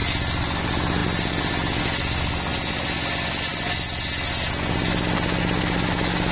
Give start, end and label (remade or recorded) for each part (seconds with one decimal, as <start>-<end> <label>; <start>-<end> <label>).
0.0-6.3 recorded